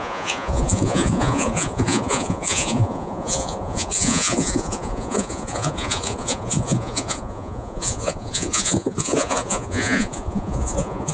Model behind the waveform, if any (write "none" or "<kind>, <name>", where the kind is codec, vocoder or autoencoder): vocoder, Vocos